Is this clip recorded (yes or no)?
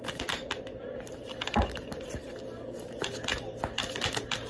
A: yes